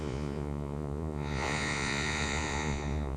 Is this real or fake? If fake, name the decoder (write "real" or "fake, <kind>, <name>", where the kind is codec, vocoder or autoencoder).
fake, vocoder, Vocos